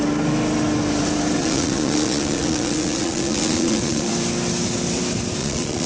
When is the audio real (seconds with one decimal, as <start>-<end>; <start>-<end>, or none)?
0.0-1.4; 4.1-5.4